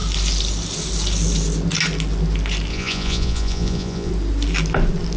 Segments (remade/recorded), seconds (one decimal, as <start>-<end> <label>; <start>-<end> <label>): 0.0-2.7 recorded; 2.7-4.1 remade; 4.1-5.2 recorded